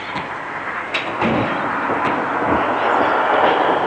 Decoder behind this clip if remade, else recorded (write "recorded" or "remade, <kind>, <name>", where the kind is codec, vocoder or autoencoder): recorded